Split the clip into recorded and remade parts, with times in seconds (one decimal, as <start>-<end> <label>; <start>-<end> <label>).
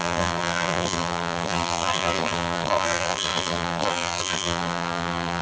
0.0-5.4 remade